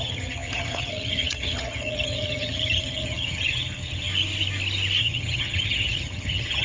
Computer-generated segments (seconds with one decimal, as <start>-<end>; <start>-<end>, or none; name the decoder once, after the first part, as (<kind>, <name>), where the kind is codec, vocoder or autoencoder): 0.0-4.1 (vocoder, HiFi-GAN); 5.0-6.6